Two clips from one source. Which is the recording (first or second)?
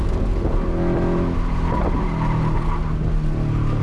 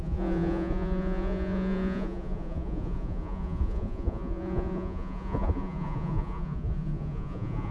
first